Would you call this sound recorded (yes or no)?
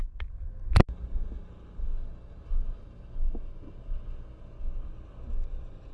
yes